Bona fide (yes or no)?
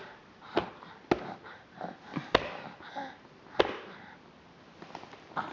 yes